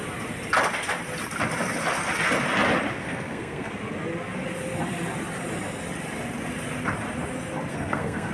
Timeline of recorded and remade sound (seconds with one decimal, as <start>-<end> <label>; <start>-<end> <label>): 0.0-3.0 recorded; 3.0-3.7 remade; 3.7-7.7 recorded; 7.7-8.3 remade